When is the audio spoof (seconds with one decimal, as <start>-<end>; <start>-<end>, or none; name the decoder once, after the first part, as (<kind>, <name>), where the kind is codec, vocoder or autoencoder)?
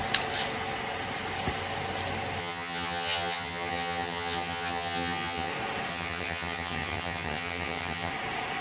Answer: 2.4-5.5 (vocoder, HiFi-GAN); 5.9-8.1